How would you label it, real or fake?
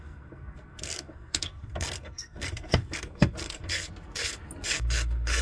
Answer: fake